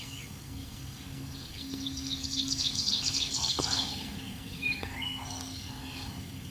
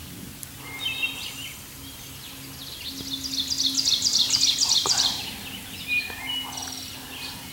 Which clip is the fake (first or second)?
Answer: first